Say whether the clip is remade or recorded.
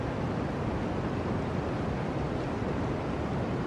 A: recorded